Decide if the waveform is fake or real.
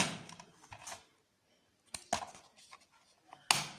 real